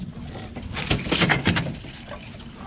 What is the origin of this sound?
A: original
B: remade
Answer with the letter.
A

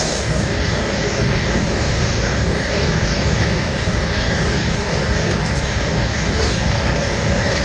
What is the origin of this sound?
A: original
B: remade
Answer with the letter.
B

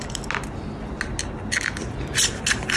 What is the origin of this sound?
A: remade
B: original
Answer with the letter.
B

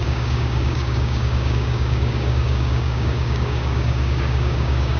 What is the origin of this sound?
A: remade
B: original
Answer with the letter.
A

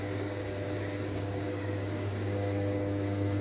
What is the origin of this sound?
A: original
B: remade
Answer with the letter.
B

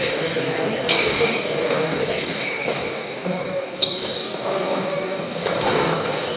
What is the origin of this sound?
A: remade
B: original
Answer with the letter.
A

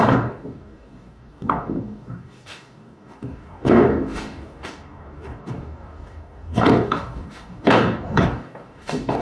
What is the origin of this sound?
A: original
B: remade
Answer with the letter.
B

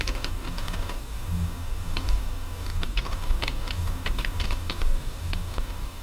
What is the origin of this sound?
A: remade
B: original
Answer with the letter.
A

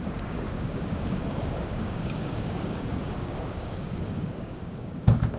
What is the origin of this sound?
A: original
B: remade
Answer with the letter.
B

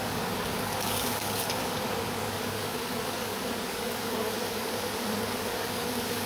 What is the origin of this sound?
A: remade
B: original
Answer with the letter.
A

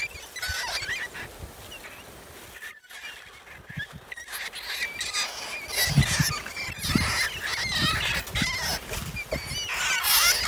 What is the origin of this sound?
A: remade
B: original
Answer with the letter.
B